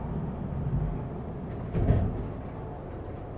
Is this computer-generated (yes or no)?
no